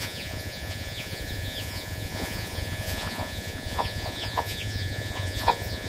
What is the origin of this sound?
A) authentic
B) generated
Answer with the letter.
B